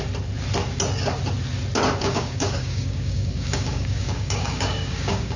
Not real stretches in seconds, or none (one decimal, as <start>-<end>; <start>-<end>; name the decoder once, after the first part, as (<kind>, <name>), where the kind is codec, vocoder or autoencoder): 2.0-5.4 (codec, DAC)